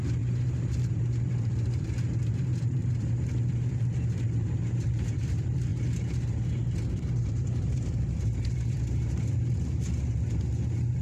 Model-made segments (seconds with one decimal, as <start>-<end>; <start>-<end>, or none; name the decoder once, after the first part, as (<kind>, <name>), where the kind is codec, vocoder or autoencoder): 0.0-5.7 (vocoder, BigVGAN v2); 7.0-11.0